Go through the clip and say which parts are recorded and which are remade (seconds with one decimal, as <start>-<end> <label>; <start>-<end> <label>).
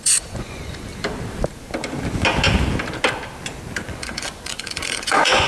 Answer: 0.0-0.9 remade; 0.9-3.9 recorded; 3.9-5.5 remade